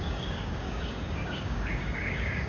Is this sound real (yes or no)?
no